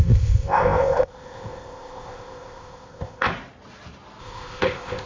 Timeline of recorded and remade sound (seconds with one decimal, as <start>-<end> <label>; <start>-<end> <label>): 0.0-3.3 remade; 3.3-4.2 recorded; 4.2-5.1 remade